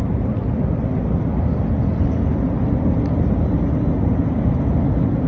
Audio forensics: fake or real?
real